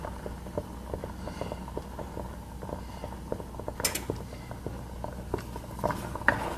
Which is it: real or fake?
real